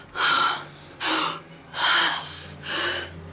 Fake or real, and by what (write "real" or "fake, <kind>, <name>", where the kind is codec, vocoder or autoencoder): real